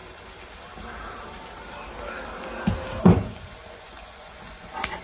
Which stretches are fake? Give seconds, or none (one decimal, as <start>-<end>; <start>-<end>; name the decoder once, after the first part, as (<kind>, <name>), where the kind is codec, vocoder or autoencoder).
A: 3.0-5.0 (vocoder, Vocos)